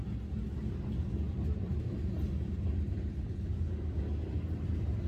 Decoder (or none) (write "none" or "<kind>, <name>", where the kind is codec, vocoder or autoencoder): none